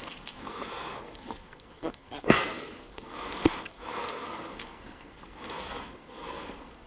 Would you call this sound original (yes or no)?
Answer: no